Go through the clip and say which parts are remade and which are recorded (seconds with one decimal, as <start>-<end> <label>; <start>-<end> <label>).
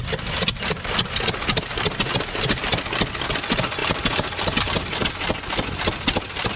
0.0-3.8 recorded; 3.8-4.8 remade; 4.8-6.6 recorded